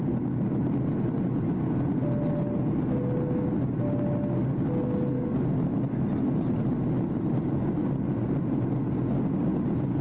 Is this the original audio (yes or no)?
yes